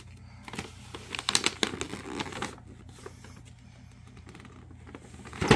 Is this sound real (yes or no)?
yes